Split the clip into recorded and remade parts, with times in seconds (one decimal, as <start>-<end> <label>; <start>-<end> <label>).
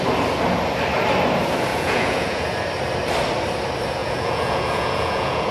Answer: 0.0-1.7 recorded; 1.7-2.5 remade; 2.5-4.0 recorded; 4.0-5.5 remade